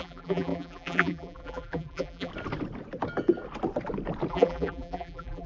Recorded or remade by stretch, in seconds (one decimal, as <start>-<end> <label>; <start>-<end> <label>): 0.0-2.3 remade; 2.3-4.3 recorded; 4.3-5.5 remade